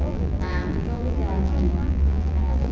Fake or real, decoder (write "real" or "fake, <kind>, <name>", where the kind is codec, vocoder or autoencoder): fake, vocoder, BigVGAN v2